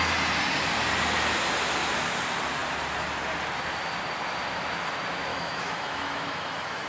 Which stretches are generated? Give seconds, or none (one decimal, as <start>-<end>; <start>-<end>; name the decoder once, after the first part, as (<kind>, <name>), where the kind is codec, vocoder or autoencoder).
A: 5.3-6.9 (autoencoder, DAC-VAE)